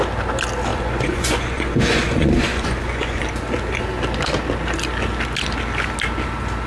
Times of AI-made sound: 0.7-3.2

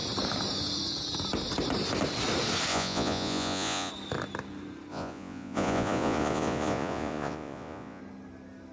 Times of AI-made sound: 2.7-3.9; 4.9-8.0

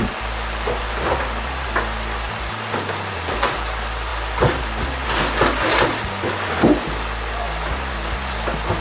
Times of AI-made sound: none

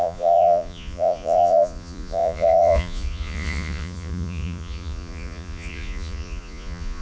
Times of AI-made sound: 0.0-7.0

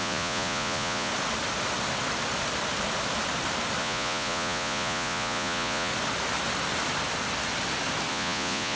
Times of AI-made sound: 0.0-1.1; 3.8-5.9; 8.1-8.8

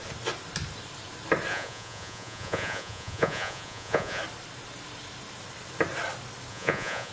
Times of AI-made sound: 1.5-4.2; 6.5-7.1

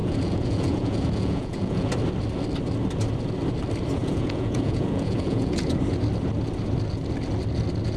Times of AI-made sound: 0.0-1.9; 4.0-5.8